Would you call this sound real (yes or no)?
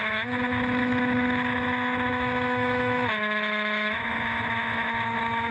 no